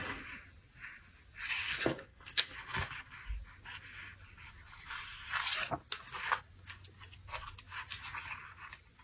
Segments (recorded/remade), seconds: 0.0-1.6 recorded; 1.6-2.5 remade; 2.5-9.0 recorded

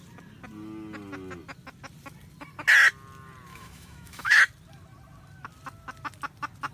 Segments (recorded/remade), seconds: 0.0-3.5 recorded; 3.5-4.4 remade; 4.4-6.7 recorded

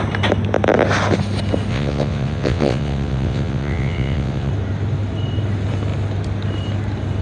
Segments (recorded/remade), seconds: 0.0-1.7 recorded; 1.7-4.5 remade; 4.5-7.2 recorded

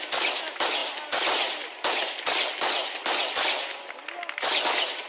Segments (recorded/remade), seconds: 0.0-0.8 remade; 0.8-2.5 recorded; 2.5-5.1 remade

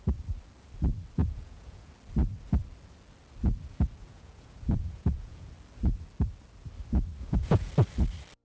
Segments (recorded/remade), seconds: 0.0-1.2 recorded; 1.2-1.9 remade; 1.9-4.0 recorded; 4.0-5.5 remade; 5.5-7.2 recorded; 7.2-7.7 remade; 7.7-8.4 recorded

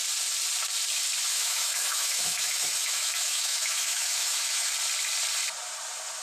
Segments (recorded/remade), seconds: 0.0-1.3 recorded; 1.3-4.7 remade; 4.7-6.2 recorded